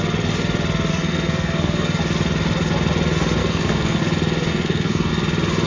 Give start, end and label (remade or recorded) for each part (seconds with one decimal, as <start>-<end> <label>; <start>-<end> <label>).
0.0-0.9 recorded; 0.9-2.0 remade; 2.0-3.4 recorded; 3.4-4.0 remade; 4.0-4.5 recorded; 4.5-5.1 remade; 5.1-5.7 recorded